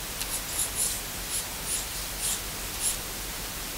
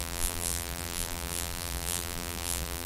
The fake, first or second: second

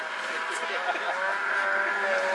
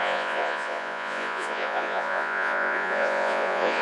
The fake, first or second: second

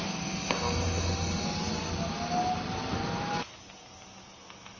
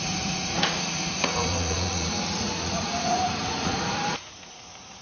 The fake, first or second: second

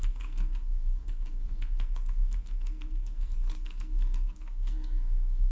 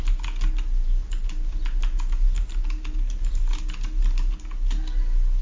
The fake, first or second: first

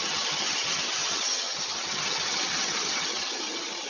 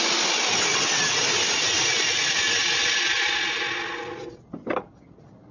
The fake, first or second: first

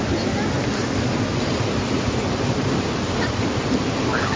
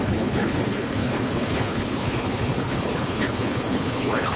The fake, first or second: second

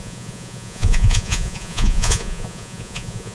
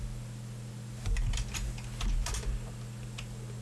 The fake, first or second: first